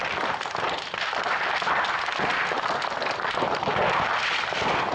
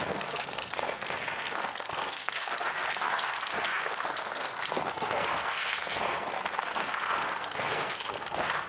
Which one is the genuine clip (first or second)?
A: first